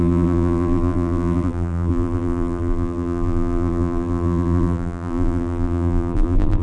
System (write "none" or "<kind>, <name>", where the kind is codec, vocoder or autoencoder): vocoder, BigVGAN v2